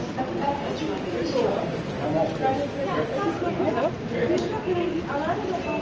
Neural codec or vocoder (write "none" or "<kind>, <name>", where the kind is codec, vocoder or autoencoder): none